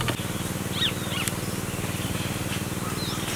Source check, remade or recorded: recorded